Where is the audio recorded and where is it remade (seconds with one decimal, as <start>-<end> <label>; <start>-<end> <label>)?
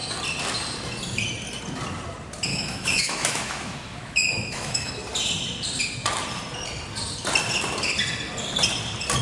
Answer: 0.0-2.5 recorded; 2.5-4.9 remade; 4.9-9.2 recorded